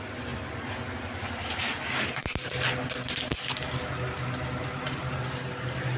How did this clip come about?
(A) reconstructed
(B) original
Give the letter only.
B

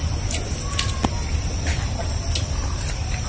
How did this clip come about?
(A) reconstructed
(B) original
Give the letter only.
B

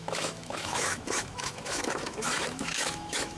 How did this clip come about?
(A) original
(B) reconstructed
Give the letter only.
B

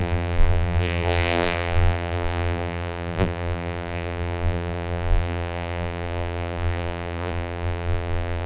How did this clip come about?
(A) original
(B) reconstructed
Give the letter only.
B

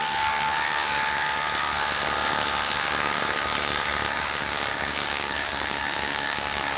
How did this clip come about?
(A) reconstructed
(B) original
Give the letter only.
A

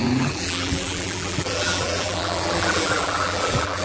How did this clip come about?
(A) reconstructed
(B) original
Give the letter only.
A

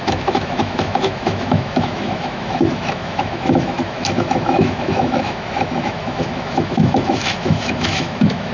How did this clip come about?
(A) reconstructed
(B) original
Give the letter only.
A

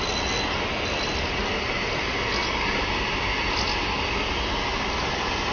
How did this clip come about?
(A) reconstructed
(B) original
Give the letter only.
B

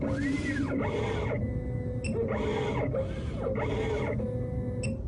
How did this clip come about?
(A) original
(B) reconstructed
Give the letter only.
A